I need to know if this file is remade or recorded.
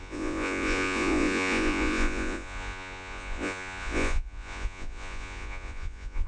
remade